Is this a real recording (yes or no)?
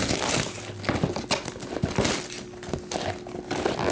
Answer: yes